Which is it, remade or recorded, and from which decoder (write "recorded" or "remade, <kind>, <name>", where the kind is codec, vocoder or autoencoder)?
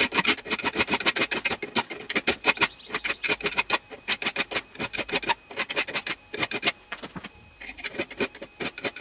remade, vocoder, BigVGAN v2